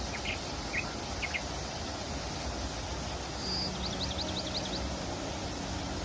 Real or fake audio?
real